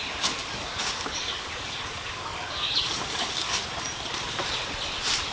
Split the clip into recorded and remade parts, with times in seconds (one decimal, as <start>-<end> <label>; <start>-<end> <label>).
0.0-0.4 recorded; 0.4-3.6 remade; 3.6-5.3 recorded